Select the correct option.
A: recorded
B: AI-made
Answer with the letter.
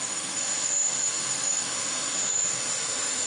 B